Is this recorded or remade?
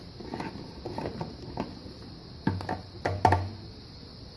recorded